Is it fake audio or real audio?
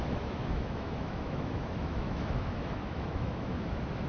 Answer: fake